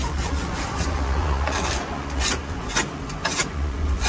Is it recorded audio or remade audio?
remade